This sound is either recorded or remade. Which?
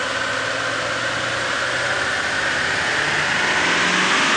recorded